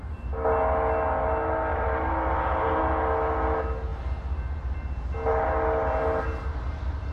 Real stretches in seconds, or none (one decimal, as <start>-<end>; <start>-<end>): 0.0-1.7; 2.8-7.1

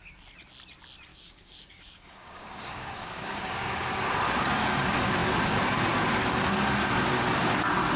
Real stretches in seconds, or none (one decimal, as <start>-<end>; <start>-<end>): 0.0-1.1; 3.8-8.0